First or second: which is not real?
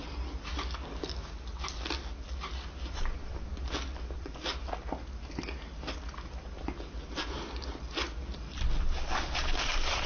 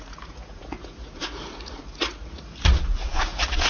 second